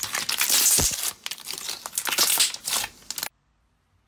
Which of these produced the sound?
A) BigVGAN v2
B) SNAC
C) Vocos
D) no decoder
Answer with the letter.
D